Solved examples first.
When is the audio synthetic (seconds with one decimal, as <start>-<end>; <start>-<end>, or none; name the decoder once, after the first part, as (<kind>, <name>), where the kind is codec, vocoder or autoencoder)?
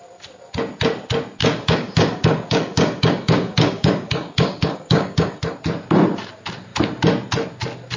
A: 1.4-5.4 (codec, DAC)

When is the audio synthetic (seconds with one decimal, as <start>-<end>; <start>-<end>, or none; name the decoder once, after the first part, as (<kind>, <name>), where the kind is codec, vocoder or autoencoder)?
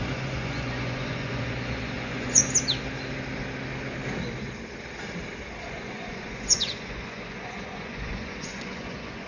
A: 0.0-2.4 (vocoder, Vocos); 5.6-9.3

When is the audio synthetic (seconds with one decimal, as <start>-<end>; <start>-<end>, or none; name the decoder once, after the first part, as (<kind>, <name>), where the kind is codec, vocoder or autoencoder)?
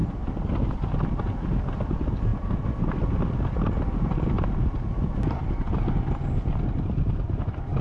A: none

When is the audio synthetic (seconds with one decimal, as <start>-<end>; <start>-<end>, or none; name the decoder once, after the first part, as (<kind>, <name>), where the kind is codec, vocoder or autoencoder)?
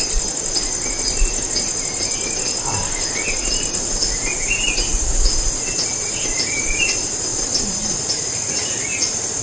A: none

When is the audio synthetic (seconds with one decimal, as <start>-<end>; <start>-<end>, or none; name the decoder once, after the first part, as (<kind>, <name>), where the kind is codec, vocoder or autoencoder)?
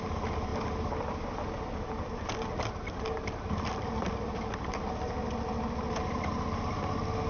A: none